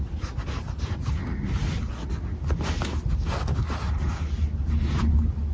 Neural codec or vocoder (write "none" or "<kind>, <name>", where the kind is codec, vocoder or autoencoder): none